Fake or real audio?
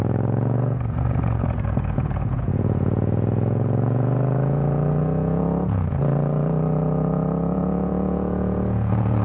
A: fake